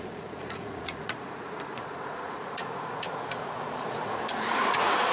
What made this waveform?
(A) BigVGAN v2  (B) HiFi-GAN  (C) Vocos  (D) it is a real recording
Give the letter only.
C